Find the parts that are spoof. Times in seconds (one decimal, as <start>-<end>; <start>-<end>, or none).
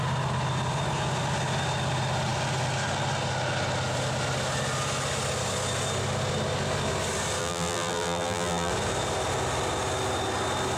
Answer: 7.4-8.7